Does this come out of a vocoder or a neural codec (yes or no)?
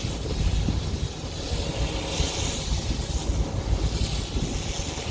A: no